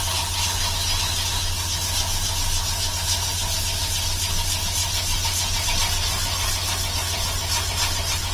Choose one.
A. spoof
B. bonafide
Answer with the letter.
B